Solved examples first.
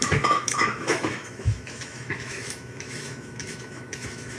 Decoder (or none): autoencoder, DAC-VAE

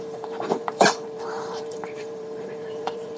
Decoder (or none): vocoder, BigVGAN v2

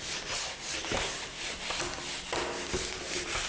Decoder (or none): none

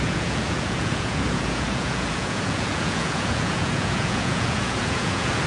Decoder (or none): vocoder, Vocos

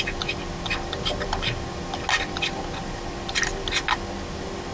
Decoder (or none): none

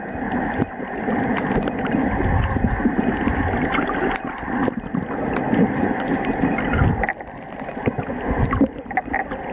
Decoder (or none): none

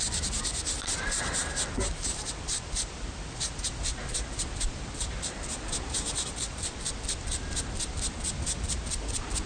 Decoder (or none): none